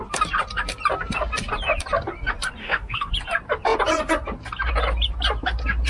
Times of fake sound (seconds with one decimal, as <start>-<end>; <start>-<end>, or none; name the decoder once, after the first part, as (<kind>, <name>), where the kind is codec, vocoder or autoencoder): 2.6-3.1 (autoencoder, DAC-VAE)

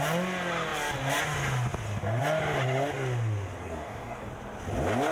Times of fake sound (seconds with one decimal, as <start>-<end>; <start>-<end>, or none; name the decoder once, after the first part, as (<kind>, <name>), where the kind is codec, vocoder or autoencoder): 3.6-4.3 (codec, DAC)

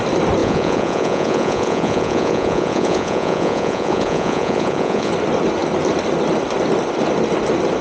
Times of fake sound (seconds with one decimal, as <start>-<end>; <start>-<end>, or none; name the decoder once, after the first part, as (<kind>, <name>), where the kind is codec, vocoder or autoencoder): 0.4-5.1 (vocoder, Vocos)